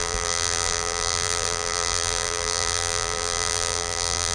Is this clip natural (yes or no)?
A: no